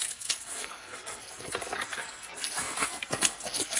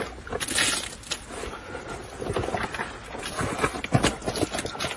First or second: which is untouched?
second